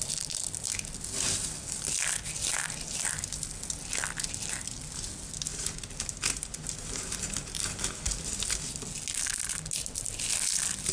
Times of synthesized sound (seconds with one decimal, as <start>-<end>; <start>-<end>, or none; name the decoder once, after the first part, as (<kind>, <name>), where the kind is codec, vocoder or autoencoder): 5.5-8.2 (vocoder, BigVGAN v2)